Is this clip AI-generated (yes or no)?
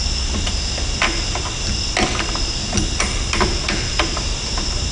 no